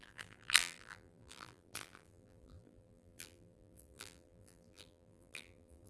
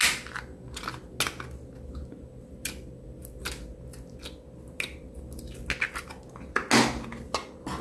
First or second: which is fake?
first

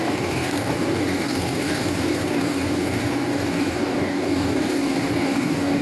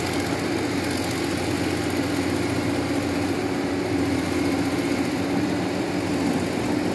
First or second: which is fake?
first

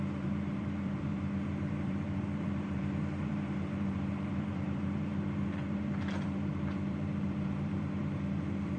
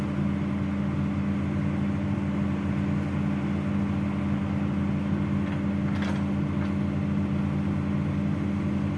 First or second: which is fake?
first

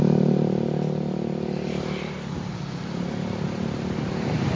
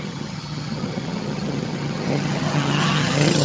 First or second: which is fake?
second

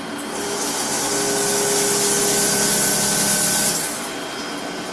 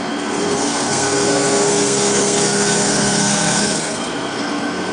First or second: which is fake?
second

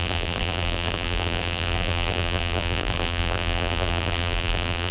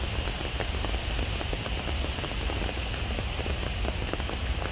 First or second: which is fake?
first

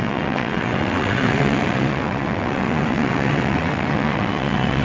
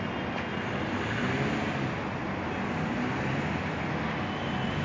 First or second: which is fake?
first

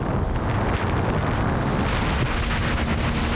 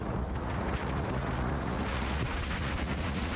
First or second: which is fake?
second